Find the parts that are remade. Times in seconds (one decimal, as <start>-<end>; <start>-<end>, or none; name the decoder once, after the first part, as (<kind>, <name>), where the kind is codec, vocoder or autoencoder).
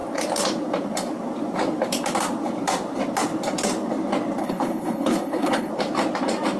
4.4-5.7 (codec, HILCodec)